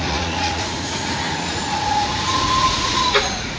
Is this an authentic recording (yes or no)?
no